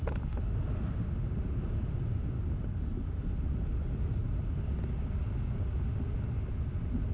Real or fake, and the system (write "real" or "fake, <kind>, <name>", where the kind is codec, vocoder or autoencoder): real